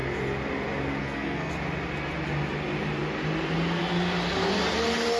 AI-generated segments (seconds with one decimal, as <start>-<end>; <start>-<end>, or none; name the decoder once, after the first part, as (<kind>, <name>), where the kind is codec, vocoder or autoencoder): 1.0-1.5 (codec, SNAC)